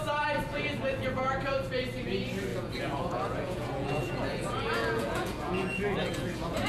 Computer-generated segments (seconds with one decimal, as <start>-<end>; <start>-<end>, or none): 0.5-1.7; 2.5-6.7